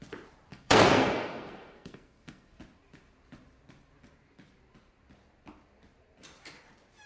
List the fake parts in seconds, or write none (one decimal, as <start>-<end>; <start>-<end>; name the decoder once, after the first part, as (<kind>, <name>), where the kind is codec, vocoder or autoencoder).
0.5-2.6 (codec, SNAC)